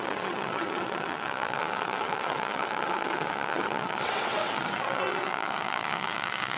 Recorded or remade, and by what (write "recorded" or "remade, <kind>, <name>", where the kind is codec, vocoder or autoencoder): remade, vocoder, WaveNeXt